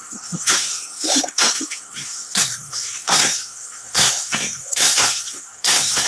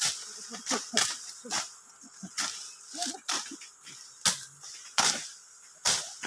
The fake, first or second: first